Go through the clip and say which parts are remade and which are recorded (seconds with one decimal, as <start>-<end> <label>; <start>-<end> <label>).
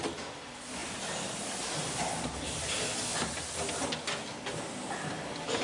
0.0-5.6 recorded